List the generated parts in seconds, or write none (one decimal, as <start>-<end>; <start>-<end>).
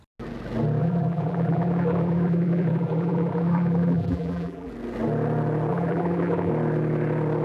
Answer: 0.8-4.7; 5.7-6.5